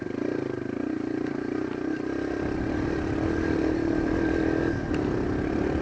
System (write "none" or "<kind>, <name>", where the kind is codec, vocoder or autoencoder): none